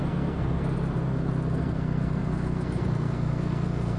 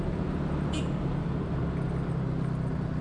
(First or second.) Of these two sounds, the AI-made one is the first